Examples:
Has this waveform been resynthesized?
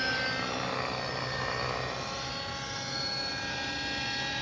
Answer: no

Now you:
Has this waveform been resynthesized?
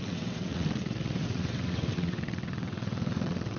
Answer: yes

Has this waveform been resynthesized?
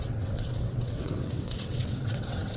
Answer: yes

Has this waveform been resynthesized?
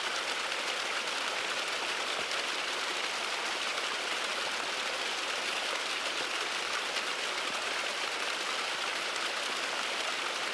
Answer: no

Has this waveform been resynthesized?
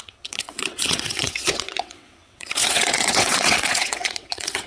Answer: yes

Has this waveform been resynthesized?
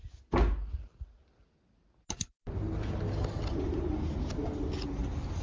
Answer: no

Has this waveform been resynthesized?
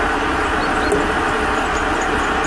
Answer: no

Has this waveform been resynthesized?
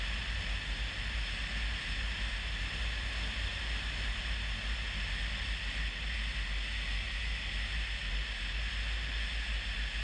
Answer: no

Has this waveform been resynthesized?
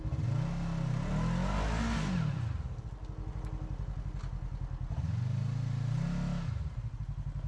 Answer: no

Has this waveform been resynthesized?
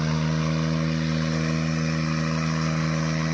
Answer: no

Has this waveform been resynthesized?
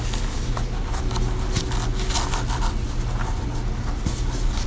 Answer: no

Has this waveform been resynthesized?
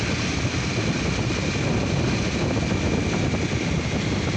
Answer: no